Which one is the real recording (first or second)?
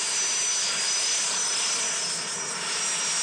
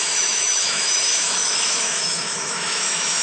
first